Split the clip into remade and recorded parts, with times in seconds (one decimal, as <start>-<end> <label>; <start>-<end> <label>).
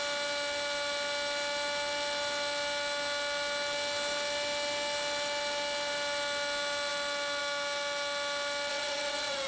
0.0-8.7 recorded; 8.7-9.5 remade